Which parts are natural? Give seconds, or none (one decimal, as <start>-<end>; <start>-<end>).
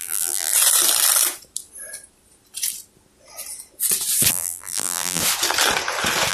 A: 0.5-4.3; 5.2-6.3